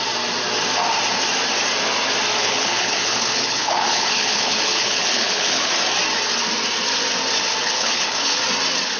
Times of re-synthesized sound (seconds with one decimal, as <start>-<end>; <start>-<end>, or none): 2.4-5.7; 7.6-8.4